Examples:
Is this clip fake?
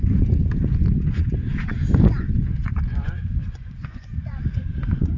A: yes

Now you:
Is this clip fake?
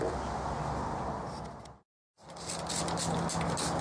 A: no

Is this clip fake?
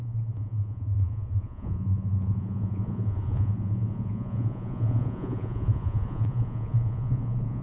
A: yes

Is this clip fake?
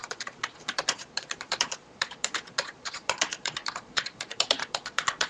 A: yes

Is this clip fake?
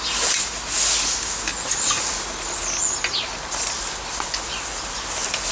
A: no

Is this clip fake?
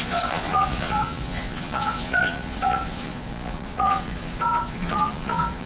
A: yes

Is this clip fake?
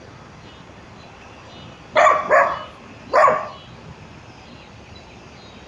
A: no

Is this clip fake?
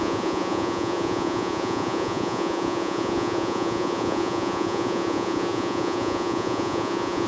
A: yes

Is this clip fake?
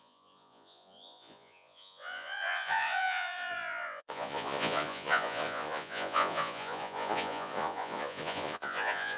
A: yes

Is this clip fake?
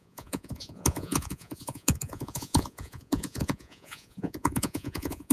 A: yes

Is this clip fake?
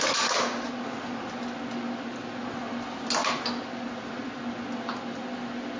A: no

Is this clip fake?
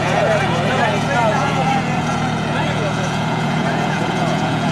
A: yes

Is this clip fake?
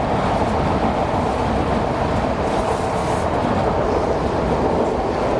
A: no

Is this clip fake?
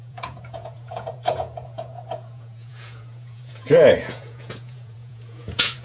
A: yes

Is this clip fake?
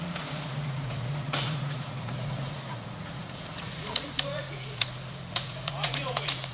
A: yes